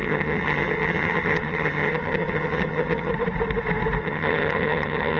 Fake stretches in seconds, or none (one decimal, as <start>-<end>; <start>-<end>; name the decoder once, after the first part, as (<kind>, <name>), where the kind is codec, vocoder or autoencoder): 0.0-3.1 (vocoder, HiFi-GAN); 4.0-5.2